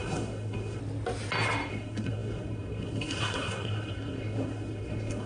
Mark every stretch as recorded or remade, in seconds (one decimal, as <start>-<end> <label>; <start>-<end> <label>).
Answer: 0.0-0.8 remade; 0.8-1.7 recorded; 1.7-5.3 remade